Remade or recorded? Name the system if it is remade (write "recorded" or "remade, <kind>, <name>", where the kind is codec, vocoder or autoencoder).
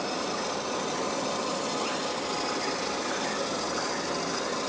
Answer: recorded